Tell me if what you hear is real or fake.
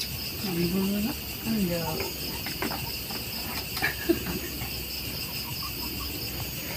real